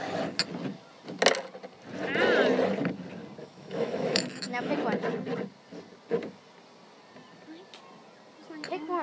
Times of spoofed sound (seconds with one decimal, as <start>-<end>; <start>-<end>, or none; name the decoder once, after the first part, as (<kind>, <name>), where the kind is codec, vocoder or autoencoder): 3.4-4.7 (autoencoder, DAC-VAE)

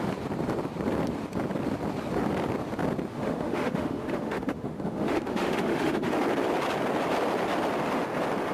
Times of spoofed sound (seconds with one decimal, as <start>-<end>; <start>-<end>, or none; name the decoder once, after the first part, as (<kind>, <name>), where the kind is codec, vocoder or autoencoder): 3.1-6.2 (autoencoder, DAC-VAE)

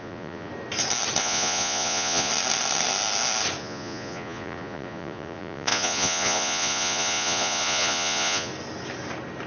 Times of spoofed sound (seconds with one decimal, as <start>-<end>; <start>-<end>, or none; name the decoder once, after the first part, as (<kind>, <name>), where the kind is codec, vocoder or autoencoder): 0.0-0.5 (vocoder, Vocos); 1.2-2.3; 3.6-8.5

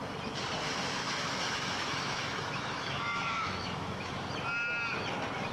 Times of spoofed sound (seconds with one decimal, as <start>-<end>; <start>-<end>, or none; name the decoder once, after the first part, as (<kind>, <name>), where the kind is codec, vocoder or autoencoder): 1.0-4.3 (autoencoder, DAC-VAE)

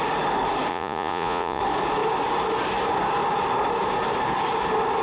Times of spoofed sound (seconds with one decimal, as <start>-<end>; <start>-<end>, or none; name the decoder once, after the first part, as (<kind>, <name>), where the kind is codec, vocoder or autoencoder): 0.7-1.6 (vocoder, Vocos)

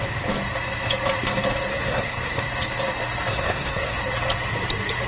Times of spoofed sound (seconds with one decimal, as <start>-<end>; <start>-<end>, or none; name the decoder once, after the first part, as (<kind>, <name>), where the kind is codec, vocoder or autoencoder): 1.7-2.4 (codec, SNAC); 3.3-4.0